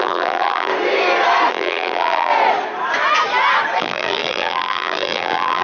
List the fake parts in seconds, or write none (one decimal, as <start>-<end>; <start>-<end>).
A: 0.0-0.7; 1.5-2.3; 3.8-5.6